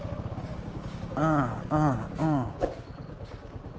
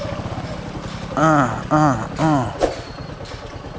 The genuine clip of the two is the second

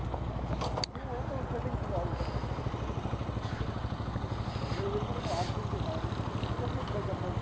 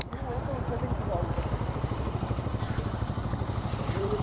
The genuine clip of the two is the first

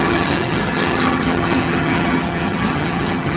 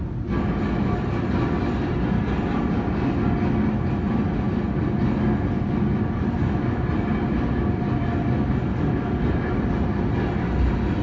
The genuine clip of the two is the second